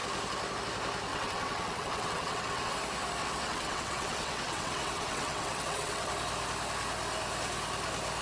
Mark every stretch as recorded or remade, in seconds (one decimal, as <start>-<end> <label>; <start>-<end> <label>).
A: 0.0-1.1 recorded; 1.1-2.7 remade; 2.7-3.2 recorded; 3.2-6.1 remade; 6.1-8.2 recorded